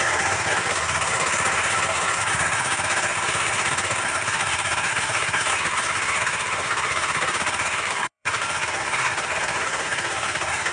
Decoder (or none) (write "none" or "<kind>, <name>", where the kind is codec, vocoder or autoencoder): codec, SNAC